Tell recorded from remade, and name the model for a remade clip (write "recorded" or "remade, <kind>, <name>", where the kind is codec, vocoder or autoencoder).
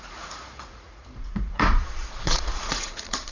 remade, vocoder, Vocos